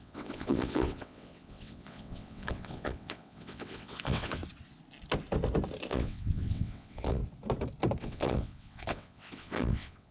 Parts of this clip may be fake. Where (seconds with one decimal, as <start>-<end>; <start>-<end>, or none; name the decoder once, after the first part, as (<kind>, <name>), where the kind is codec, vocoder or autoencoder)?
0.0-4.4 (vocoder, WaveNeXt); 5.9-7.2; 8.0-10.1